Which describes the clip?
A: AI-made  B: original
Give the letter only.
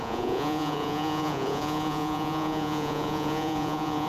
A